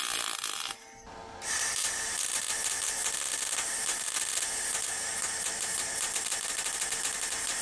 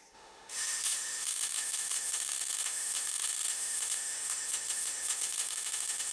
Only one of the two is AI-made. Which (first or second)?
second